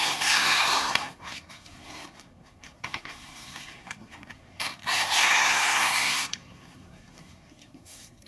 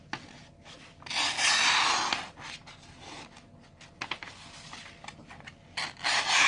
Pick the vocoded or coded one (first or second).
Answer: first